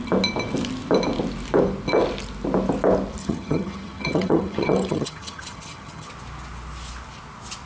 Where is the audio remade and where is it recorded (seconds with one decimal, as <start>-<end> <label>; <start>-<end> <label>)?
0.0-3.2 recorded; 3.2-6.1 remade; 6.1-7.7 recorded